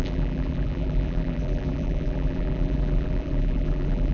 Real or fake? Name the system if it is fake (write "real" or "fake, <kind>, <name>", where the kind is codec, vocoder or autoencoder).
fake, vocoder, BigVGAN v2